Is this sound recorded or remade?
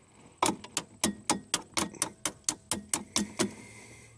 recorded